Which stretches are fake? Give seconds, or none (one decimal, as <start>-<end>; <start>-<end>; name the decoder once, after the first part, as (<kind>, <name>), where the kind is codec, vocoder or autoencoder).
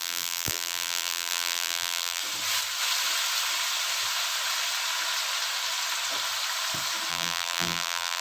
0.0-2.2 (vocoder, BigVGAN v2); 7.1-8.2